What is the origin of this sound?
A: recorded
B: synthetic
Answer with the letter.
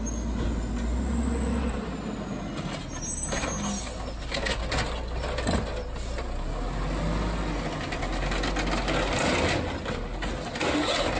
A